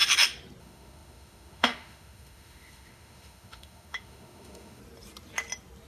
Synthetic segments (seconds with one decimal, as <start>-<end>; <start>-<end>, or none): 0.6-4.8